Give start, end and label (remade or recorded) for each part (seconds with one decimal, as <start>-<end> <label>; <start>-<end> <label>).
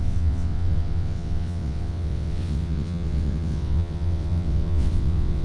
0.0-5.4 remade